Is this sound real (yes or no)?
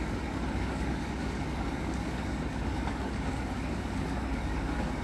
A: no